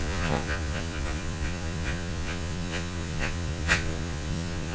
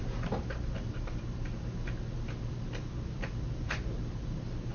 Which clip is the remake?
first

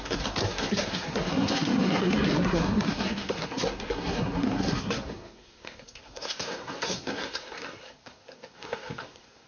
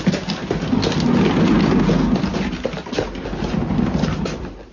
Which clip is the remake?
first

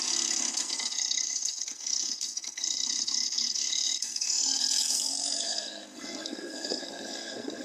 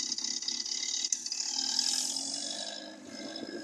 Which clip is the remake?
first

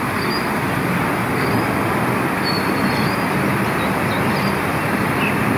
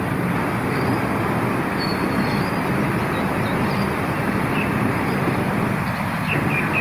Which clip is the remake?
second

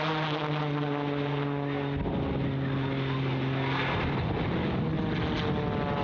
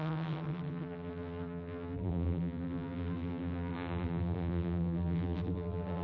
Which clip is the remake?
second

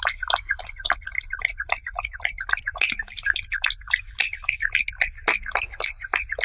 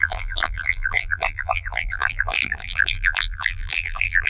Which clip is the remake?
second